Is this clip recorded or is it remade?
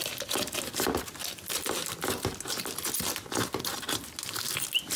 recorded